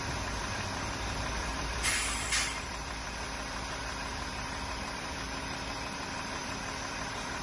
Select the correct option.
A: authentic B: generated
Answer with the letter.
B